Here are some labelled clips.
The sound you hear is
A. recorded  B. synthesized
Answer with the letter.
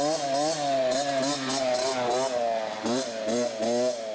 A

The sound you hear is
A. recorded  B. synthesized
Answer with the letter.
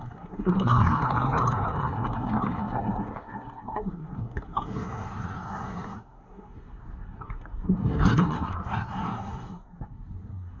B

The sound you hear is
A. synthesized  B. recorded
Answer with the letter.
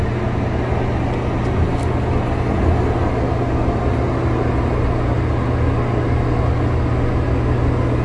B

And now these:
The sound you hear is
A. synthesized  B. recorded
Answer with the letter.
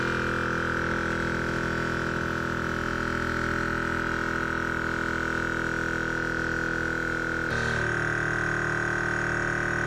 B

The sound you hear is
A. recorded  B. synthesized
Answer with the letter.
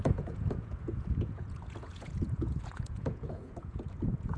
B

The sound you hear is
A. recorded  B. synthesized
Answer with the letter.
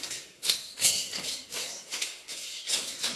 B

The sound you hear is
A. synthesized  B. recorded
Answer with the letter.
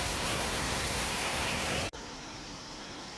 A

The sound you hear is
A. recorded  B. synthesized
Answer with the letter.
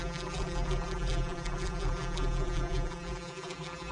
B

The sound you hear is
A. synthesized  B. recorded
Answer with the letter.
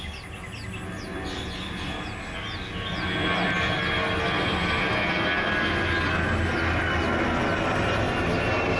B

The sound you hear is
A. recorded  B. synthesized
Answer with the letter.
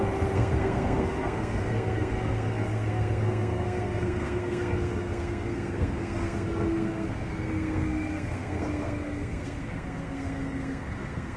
B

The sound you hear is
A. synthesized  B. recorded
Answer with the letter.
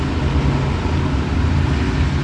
B